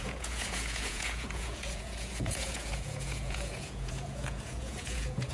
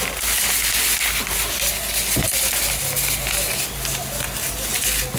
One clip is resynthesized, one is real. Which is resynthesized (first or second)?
first